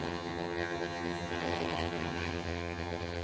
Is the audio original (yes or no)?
no